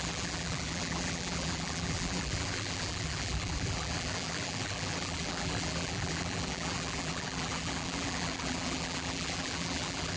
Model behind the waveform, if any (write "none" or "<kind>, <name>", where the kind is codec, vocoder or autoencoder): vocoder, BigVGAN v2